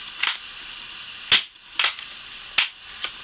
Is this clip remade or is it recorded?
recorded